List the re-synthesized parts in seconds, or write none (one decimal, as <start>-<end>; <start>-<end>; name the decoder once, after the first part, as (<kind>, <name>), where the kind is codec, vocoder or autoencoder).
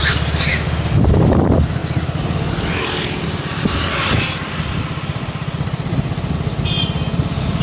0.5-1.0 (autoencoder, DAC-VAE)